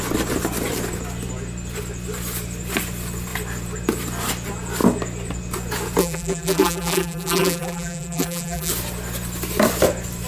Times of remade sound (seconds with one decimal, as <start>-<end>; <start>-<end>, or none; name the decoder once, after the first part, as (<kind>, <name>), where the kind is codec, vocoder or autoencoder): 6.0-8.7 (vocoder, BigVGAN v2)